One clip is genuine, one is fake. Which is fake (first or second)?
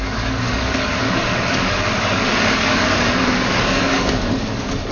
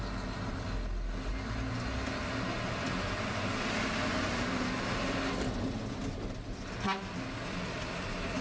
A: first